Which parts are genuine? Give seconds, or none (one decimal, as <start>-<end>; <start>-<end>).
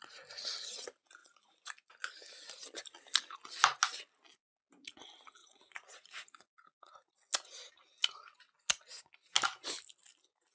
0.0-1.2; 1.9-5.4; 7.1-10.5